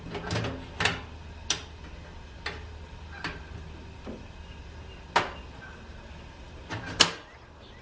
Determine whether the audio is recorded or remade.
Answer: recorded